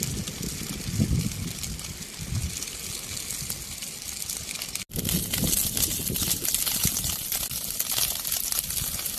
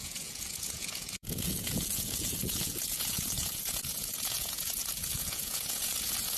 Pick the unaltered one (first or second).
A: first